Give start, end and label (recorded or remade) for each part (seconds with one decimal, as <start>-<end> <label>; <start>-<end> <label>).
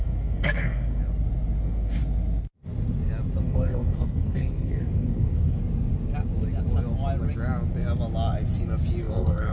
0.0-1.0 remade; 1.0-1.6 recorded; 1.6-2.0 remade; 2.0-3.4 recorded; 3.4-5.6 remade; 5.6-9.0 recorded; 9.0-9.5 remade